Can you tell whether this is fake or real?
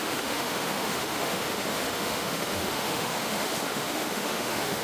fake